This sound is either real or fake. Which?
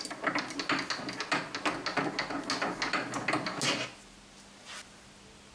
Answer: real